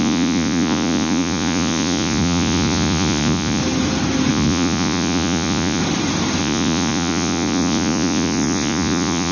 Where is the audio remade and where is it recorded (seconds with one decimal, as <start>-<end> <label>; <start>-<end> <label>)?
0.0-3.6 remade; 3.6-4.3 recorded; 4.3-5.8 remade; 5.8-6.4 recorded; 6.4-9.3 remade

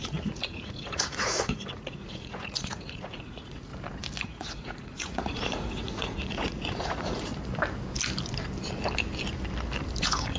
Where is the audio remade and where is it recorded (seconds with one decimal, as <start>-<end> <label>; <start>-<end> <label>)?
0.0-3.7 remade; 3.7-4.2 recorded; 4.2-7.3 remade; 7.3-10.0 recorded; 10.0-10.4 remade

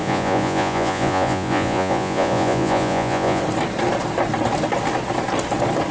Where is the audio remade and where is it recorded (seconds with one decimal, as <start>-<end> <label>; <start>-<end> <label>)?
0.0-3.4 remade; 3.4-5.9 recorded

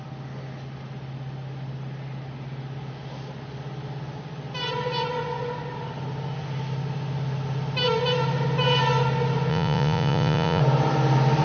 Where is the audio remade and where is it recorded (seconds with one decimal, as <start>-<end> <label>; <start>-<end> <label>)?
0.0-9.5 recorded; 9.5-10.6 remade; 10.6-11.4 recorded

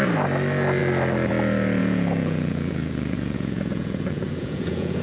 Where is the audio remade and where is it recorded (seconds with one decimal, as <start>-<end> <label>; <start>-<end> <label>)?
0.0-1.8 recorded; 1.8-5.0 remade

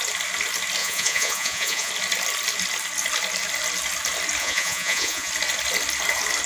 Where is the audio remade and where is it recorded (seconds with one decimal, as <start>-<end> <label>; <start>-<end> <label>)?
0.0-0.8 recorded; 0.8-1.9 remade; 1.9-4.4 recorded; 4.4-5.3 remade; 5.3-6.5 recorded

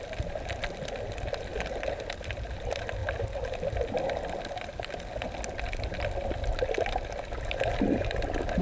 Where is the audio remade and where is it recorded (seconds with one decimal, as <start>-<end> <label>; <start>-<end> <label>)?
0.0-8.6 recorded